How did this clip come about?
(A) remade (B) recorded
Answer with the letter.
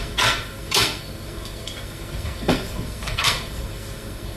A